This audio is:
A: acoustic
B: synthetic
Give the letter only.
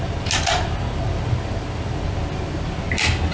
A